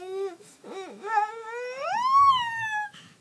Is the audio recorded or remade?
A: remade